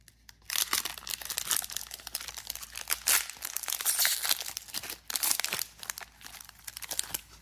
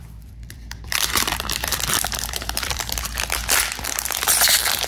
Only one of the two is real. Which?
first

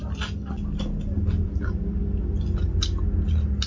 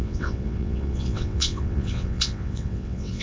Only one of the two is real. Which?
first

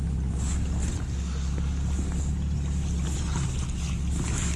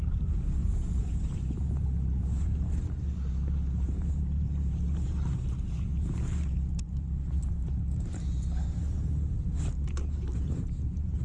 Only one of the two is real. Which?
first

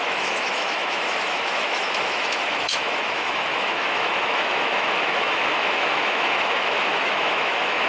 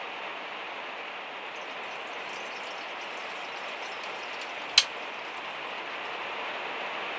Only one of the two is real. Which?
second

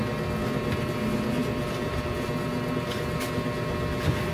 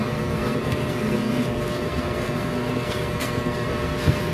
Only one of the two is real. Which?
first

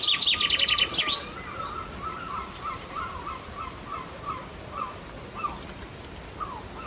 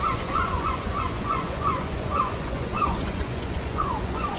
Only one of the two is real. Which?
first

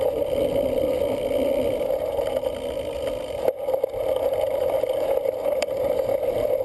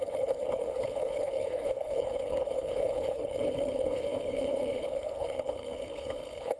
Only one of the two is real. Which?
first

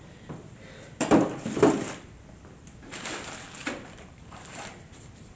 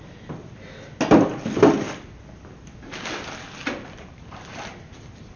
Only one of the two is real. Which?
second